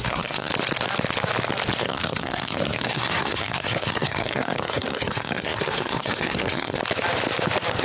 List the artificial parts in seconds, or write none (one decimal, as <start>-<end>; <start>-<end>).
0.0-0.5; 1.8-6.8